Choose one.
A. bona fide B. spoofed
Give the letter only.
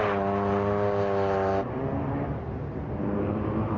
B